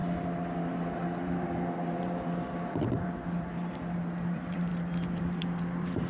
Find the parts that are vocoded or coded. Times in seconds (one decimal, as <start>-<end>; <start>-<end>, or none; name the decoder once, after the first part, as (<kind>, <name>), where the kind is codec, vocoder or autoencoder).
0.0-6.1 (vocoder, BigVGAN v2)